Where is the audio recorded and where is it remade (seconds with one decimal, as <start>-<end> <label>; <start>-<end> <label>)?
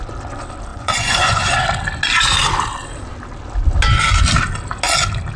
0.0-0.7 recorded; 0.7-1.5 remade; 1.5-5.4 recorded